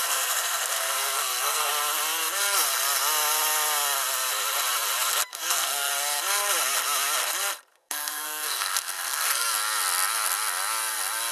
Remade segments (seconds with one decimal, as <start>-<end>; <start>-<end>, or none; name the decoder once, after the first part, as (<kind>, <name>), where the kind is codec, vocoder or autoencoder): 0.0-1.7 (codec, SNAC); 5.3-5.9; 7.7-9.5